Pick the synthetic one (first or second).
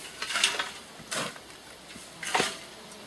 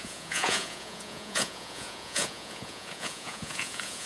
second